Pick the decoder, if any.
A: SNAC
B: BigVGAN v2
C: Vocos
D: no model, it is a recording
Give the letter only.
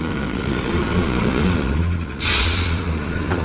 C